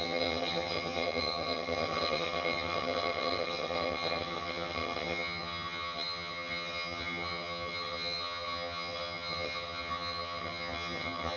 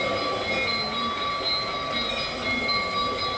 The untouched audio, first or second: second